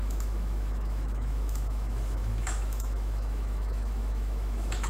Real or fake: fake